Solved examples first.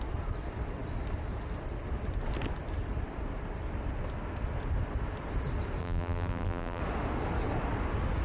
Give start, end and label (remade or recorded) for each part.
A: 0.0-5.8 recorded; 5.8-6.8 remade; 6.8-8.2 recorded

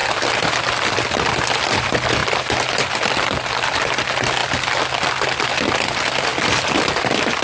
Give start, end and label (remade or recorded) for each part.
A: 0.0-0.6 recorded; 0.6-4.4 remade; 4.4-5.7 recorded; 5.7-6.3 remade; 6.3-7.0 recorded; 7.0-7.4 remade

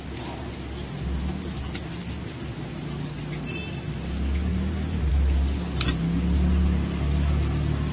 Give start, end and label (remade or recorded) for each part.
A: 0.0-4.5 recorded; 4.5-5.1 remade; 5.1-7.9 recorded

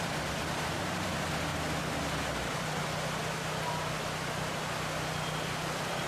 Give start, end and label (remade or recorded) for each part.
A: 0.0-1.5 remade; 1.5-4.7 recorded; 4.7-6.1 remade

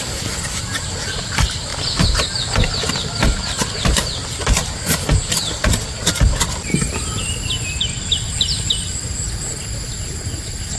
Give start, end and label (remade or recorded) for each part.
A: 0.0-10.8 remade